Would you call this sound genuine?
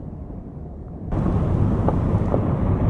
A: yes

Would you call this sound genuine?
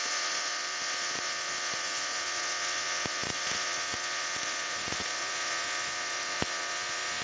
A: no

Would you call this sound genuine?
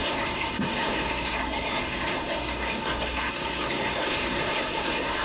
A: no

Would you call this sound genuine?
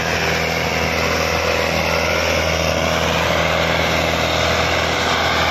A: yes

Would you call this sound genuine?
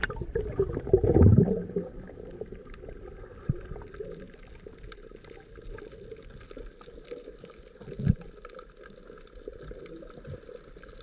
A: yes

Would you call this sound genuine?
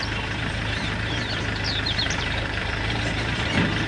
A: no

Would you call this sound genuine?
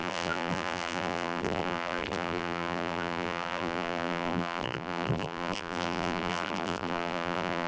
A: no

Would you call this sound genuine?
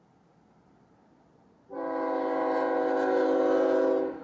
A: yes